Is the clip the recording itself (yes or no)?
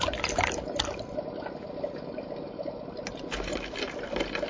yes